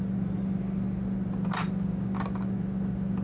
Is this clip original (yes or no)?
yes